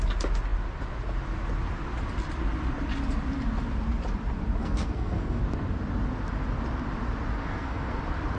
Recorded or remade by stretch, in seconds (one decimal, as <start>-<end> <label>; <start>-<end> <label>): 0.0-4.6 recorded; 4.6-5.4 remade; 5.4-7.4 recorded; 7.4-8.0 remade; 8.0-8.4 recorded